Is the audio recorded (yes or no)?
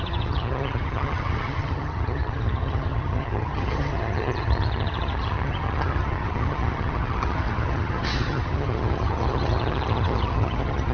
no